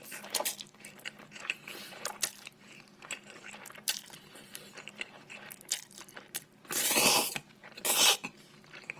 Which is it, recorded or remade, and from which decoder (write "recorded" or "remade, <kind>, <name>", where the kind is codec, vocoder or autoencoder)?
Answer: remade, vocoder, BigVGAN v2